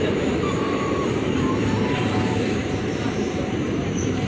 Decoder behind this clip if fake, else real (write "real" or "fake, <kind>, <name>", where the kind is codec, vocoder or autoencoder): fake, vocoder, BigVGAN v2